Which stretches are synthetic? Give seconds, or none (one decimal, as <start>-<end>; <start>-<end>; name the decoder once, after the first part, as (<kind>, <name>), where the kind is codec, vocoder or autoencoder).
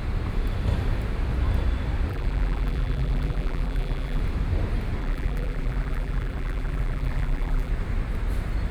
2.1-4.2 (vocoder, BigVGAN v2); 5.0-7.7